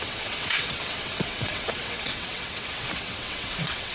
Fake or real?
fake